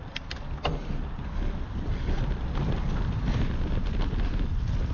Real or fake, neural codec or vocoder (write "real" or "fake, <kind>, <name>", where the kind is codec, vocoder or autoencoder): real